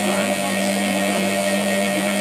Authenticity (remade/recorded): remade